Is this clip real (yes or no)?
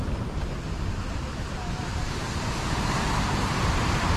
no